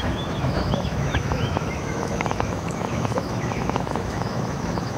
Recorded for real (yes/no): no